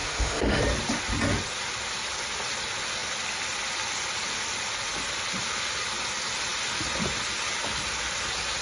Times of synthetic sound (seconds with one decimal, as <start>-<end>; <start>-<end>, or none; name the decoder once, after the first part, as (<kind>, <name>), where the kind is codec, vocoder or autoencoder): 0.0-0.6 (autoencoder, DAC-VAE)